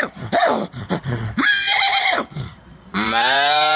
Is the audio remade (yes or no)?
yes